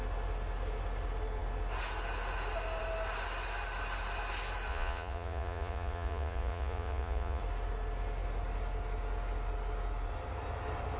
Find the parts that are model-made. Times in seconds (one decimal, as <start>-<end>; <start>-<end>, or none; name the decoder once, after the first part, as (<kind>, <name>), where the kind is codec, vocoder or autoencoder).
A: 4.7-7.4 (vocoder, Vocos)